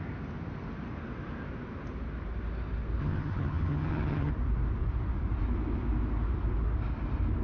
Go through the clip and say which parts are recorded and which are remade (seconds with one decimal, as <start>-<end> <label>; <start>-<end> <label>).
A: 0.0-3.0 recorded; 3.0-4.3 remade; 4.3-7.4 recorded